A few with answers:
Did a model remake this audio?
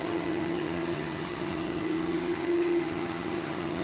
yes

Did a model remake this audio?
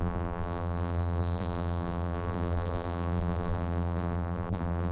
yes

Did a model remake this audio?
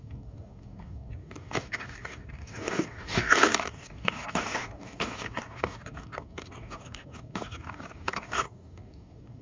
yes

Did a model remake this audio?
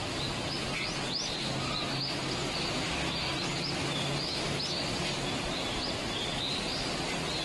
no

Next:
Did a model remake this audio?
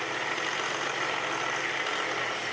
no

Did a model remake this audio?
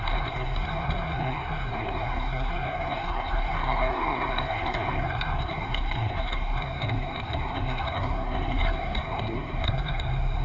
yes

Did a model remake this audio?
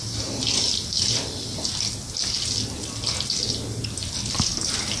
no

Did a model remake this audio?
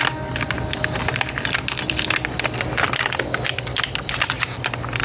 no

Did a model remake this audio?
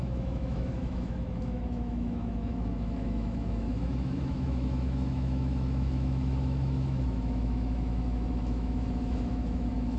yes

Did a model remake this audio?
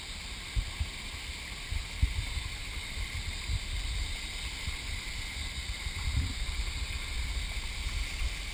no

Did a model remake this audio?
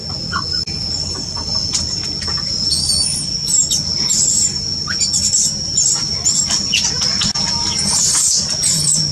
no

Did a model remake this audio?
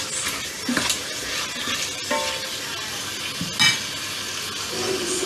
no